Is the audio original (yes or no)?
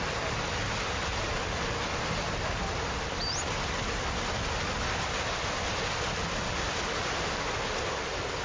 no